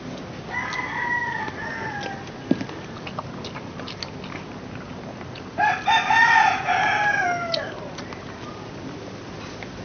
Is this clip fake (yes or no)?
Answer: no